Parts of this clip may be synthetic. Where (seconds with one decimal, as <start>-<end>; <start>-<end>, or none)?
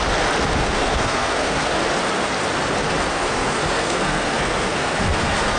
0.6-1.8; 3.1-5.6